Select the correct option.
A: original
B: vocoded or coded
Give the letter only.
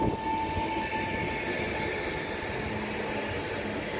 A